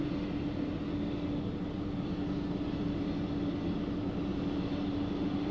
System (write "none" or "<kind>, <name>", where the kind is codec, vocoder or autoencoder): none